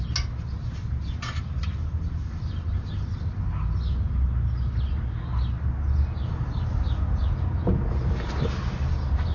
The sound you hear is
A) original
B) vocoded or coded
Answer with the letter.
A